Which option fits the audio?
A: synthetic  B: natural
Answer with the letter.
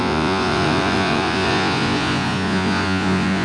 A